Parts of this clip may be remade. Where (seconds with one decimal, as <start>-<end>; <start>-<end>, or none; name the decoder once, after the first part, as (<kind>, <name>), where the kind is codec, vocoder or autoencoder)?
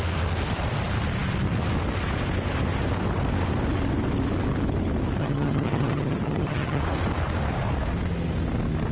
5.2-6.8 (vocoder, HiFi-GAN)